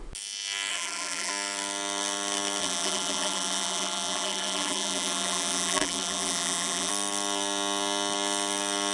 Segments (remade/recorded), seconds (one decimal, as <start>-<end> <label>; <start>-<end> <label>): 0.0-0.7 recorded; 0.7-1.3 remade; 1.3-2.6 recorded; 2.6-6.9 remade; 6.9-8.9 recorded